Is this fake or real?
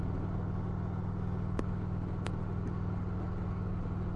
real